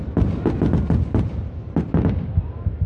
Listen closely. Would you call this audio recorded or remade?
recorded